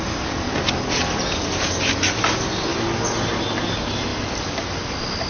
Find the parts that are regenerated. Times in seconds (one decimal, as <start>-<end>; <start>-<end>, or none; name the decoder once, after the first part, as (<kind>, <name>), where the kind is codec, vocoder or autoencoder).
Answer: none